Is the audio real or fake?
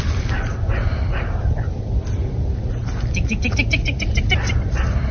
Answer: real